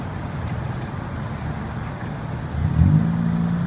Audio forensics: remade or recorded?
recorded